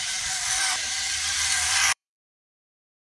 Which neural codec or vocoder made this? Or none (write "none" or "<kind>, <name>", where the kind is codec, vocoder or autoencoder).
vocoder, BigVGAN v2